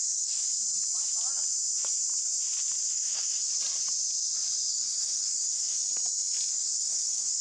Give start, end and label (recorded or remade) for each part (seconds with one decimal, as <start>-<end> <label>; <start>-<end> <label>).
0.0-0.5 remade; 0.5-2.9 recorded; 2.9-3.5 remade; 3.5-4.7 recorded; 4.7-5.8 remade; 5.8-6.5 recorded; 6.5-7.4 remade

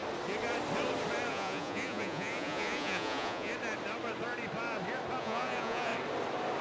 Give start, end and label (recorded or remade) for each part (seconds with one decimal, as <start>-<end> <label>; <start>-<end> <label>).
0.0-1.3 recorded; 1.3-3.5 remade; 3.5-5.2 recorded; 5.2-5.9 remade; 5.9-6.6 recorded

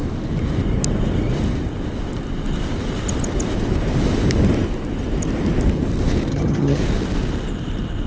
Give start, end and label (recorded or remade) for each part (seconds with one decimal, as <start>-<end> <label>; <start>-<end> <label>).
0.0-6.3 recorded; 6.3-6.8 remade; 6.8-8.1 recorded

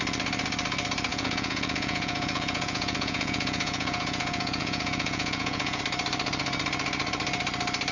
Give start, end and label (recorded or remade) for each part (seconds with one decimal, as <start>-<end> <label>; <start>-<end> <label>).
0.0-1.1 recorded; 1.1-5.8 remade; 5.8-7.9 recorded

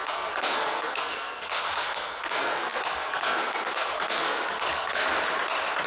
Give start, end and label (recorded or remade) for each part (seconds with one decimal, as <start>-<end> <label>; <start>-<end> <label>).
0.0-5.0 remade; 5.0-5.9 recorded

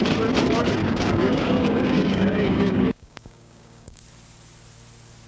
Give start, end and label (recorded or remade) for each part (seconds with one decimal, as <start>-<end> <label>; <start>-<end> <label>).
0.0-0.8 recorded; 0.8-4.0 remade; 4.0-5.3 recorded

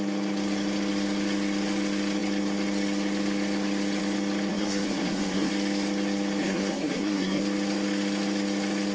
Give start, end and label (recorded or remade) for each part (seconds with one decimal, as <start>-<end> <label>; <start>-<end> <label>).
0.0-4.5 recorded; 4.5-5.5 remade; 5.5-6.4 recorded; 6.4-7.4 remade; 7.4-8.9 recorded